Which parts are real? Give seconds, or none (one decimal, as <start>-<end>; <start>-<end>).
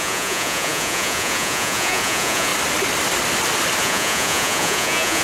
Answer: 2.5-3.8